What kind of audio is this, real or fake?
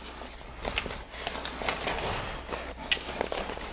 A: real